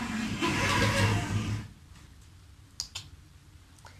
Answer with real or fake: real